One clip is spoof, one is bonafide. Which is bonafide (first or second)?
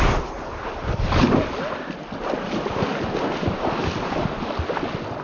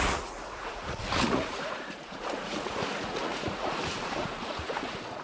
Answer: first